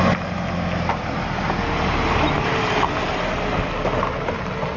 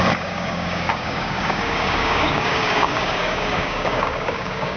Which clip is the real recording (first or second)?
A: first